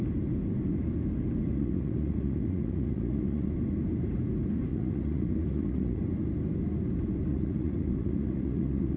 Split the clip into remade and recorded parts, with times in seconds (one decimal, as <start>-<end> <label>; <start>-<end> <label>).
0.0-1.5 recorded; 1.5-3.5 remade; 3.5-4.7 recorded; 4.7-6.0 remade; 6.0-7.3 recorded; 7.3-9.0 remade